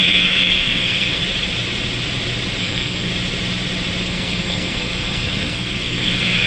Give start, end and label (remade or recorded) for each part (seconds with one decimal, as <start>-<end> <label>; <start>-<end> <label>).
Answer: 0.0-1.2 remade; 1.2-2.6 recorded; 2.6-3.1 remade; 3.1-4.0 recorded; 4.0-6.5 remade